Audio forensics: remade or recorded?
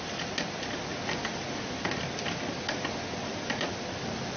recorded